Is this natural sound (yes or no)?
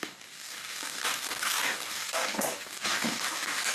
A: no